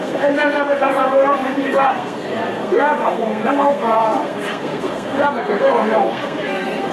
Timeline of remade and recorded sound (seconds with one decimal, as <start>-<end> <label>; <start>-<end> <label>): 0.0-6.9 remade

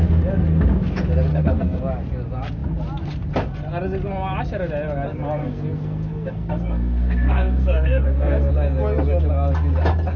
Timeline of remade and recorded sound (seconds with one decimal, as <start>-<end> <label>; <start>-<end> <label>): 0.0-1.3 recorded; 1.3-1.8 remade; 1.8-5.4 recorded; 5.4-8.5 remade; 8.5-10.2 recorded

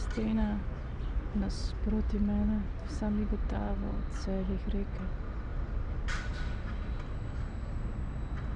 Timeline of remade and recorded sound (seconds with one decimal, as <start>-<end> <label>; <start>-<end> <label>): 0.0-8.6 recorded

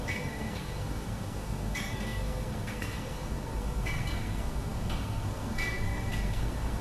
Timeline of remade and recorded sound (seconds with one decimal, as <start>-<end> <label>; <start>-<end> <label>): 0.0-6.8 remade